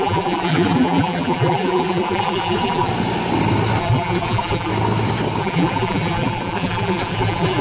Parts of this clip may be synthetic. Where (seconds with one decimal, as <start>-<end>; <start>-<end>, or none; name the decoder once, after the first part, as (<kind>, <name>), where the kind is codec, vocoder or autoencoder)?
0.0-2.9 (vocoder, BigVGAN v2); 3.8-4.7; 5.4-7.6